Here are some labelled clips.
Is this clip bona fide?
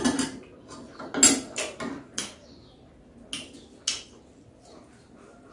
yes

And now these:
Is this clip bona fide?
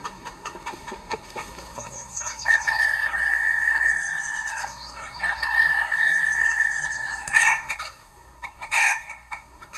no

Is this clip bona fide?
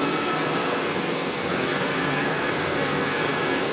no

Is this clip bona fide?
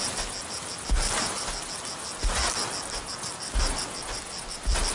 yes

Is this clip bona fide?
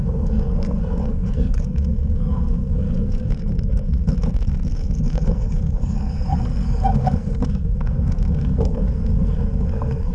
no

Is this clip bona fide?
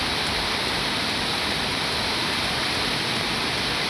yes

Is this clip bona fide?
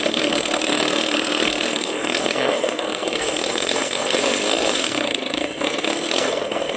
no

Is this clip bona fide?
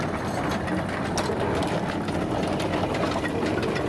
yes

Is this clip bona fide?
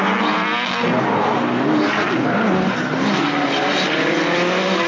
yes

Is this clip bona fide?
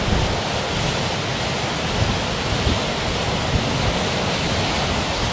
yes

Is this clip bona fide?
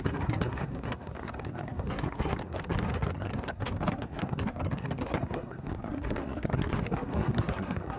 no